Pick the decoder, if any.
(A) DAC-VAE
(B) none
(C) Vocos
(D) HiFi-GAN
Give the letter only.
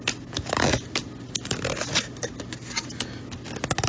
B